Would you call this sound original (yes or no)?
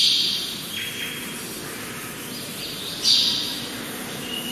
yes